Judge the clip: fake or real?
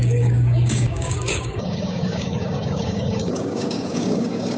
fake